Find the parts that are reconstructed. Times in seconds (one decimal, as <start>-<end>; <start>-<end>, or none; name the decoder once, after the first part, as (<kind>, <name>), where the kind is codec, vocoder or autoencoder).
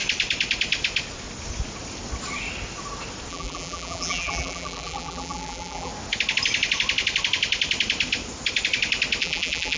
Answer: 3.3-5.9 (vocoder, BigVGAN v2); 9.2-9.8